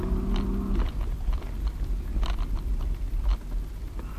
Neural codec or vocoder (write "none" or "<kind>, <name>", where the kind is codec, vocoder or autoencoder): none